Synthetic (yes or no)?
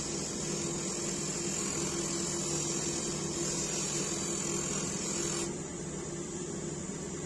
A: no